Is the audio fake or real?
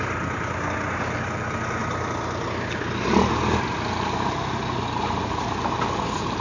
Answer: real